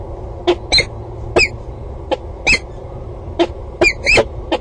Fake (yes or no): no